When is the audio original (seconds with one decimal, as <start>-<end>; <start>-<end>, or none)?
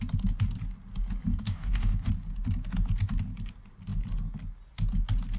0.0-1.3; 2.1-5.4